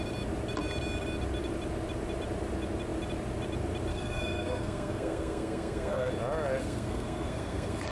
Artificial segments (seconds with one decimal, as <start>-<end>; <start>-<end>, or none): 3.9-6.1; 6.6-7.9